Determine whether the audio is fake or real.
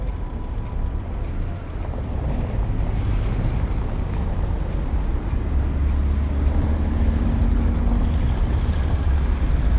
real